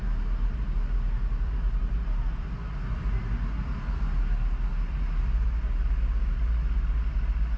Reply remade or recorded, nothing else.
recorded